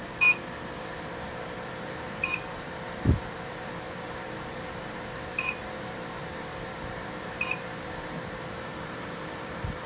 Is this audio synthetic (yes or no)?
yes